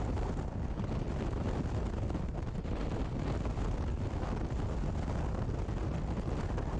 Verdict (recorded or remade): recorded